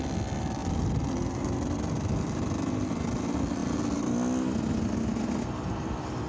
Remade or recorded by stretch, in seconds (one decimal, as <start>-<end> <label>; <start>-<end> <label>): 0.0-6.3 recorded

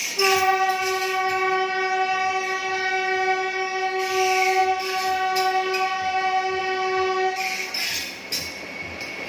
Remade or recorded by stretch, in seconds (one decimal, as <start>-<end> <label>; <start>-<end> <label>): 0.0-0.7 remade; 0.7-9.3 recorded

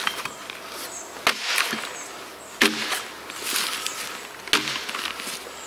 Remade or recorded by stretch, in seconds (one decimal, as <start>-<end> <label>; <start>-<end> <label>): 0.0-0.6 remade; 0.6-5.7 recorded

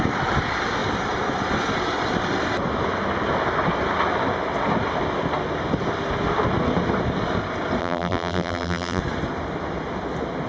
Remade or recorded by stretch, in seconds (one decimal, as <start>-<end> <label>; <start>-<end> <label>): 0.0-7.8 recorded; 7.8-9.0 remade; 9.0-10.5 recorded

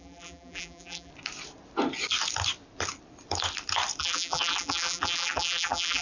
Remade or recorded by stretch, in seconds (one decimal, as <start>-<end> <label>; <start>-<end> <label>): 0.0-1.1 remade; 1.1-4.0 recorded; 4.0-6.0 remade